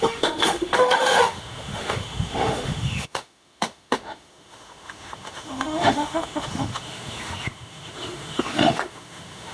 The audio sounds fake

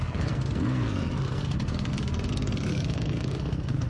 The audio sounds fake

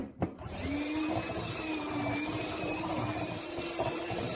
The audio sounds fake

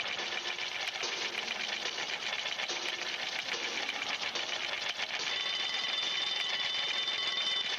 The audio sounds real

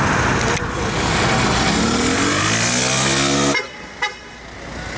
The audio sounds real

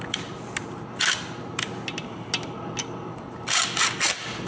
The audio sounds real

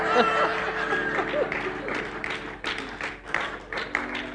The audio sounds real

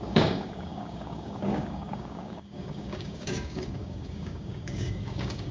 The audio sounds fake